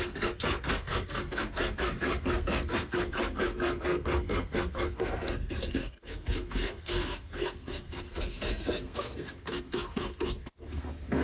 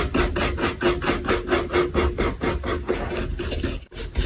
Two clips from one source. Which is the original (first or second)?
second